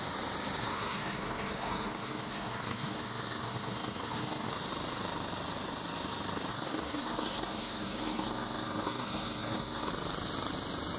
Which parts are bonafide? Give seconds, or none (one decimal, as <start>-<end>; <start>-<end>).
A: 0.0-0.6; 4.5-6.5; 9.9-11.0